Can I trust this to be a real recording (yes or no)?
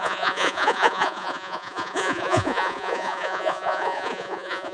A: no